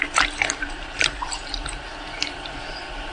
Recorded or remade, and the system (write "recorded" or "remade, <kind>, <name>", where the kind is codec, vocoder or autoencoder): remade, vocoder, BigVGAN v2